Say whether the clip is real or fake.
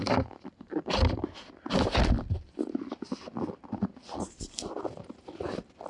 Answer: real